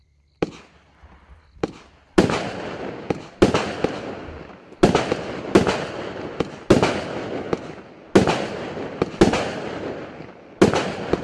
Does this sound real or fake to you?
real